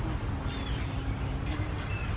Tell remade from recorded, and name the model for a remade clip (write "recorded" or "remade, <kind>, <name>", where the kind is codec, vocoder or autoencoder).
recorded